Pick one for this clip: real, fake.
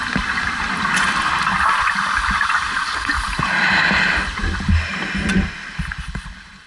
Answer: real